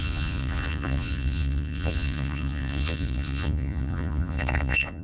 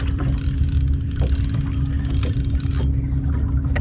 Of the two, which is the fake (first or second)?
first